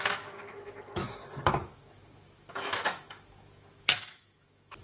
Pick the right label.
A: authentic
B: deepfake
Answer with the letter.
B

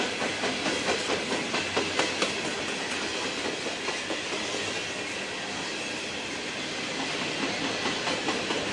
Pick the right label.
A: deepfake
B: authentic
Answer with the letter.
B